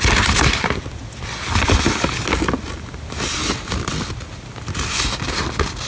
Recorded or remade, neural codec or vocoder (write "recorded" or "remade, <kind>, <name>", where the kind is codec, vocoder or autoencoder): recorded